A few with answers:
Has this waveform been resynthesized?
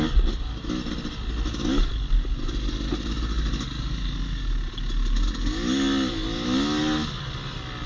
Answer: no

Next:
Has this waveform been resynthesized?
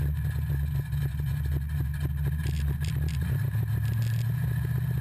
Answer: no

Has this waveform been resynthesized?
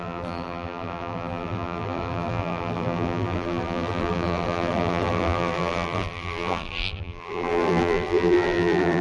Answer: yes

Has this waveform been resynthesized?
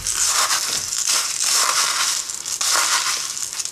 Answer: no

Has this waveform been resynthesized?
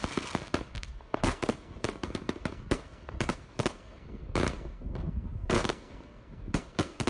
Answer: yes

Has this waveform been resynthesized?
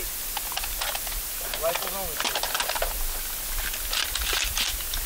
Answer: no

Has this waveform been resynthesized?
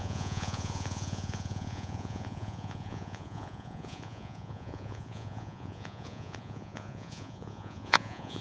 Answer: yes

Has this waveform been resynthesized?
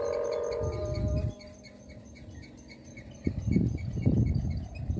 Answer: no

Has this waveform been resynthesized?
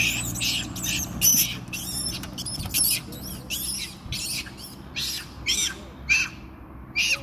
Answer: no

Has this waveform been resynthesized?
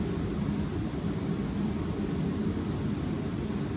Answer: no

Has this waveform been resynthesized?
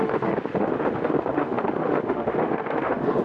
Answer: yes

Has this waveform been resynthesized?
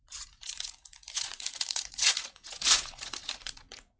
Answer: yes